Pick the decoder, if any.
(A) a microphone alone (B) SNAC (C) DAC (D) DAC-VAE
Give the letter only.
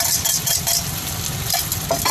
A